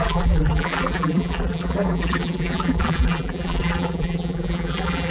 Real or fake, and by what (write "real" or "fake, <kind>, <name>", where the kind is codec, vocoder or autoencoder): fake, vocoder, BigVGAN v2